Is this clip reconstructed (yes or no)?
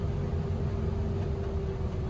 no